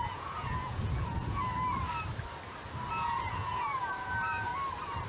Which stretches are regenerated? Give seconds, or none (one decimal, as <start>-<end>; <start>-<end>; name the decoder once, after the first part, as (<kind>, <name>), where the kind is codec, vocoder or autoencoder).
0.0-1.5 (vocoder, Vocos); 2.9-4.5